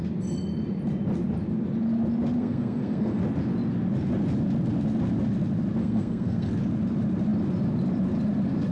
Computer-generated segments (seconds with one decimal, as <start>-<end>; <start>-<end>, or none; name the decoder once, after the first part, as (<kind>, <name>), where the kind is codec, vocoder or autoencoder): 2.4-3.2 (codec, SNAC); 5.8-6.5